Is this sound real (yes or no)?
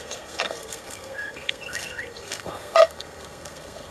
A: no